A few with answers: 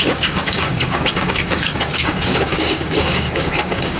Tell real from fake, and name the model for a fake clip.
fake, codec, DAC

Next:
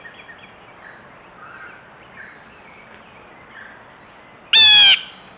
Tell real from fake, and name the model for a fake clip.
real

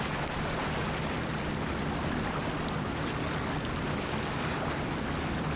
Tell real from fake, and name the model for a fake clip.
real